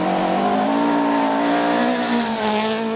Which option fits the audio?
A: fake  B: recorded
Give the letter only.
B